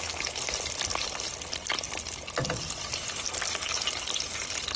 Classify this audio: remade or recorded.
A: recorded